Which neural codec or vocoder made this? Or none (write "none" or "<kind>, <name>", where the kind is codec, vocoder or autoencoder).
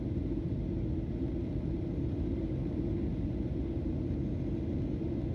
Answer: none